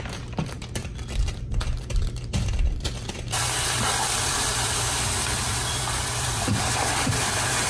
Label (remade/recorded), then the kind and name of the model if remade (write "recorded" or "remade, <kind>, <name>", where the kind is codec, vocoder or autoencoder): remade, vocoder, BigVGAN v2